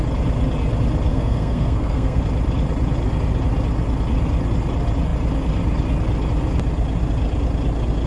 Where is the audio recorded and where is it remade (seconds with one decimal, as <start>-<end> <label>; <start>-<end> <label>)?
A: 0.0-1.1 recorded; 1.1-2.2 remade; 2.2-8.1 recorded